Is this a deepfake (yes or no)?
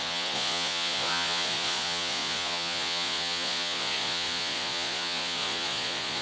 yes